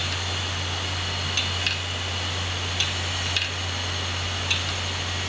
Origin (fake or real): real